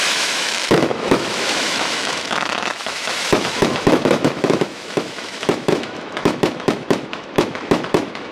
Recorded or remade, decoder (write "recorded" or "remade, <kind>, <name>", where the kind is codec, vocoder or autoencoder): remade, autoencoder, DAC-VAE